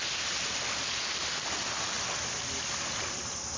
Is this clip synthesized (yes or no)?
no